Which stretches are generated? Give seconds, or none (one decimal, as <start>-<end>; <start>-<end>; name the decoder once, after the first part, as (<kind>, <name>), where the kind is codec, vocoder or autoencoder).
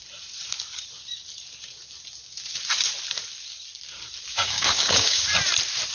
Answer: 4.3-5.2 (codec, DAC)